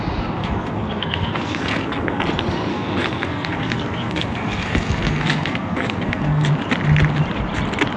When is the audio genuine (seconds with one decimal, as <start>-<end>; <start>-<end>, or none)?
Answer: 0.0-0.4; 2.2-2.7; 6.5-8.0